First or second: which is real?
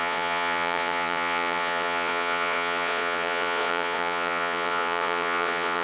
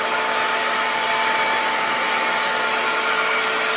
second